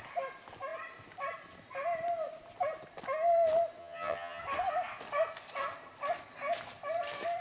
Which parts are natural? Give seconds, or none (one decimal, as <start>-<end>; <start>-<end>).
0.0-3.8; 4.4-7.4